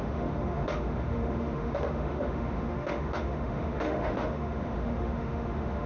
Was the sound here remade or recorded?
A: remade